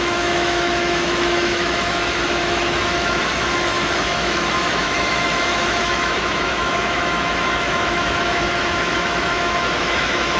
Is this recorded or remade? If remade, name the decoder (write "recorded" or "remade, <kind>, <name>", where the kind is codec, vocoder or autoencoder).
remade, autoencoder, DAC-VAE